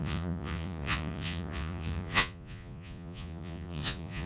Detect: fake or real fake